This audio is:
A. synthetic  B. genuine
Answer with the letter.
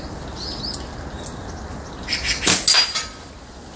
B